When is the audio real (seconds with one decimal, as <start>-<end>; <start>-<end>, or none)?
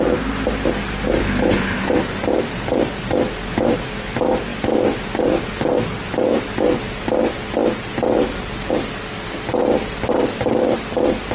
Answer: 0.0-1.2; 1.9-11.3